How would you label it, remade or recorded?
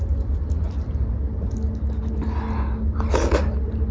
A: recorded